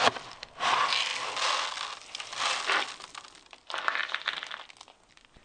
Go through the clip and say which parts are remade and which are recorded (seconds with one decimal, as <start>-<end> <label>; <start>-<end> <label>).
0.0-5.4 recorded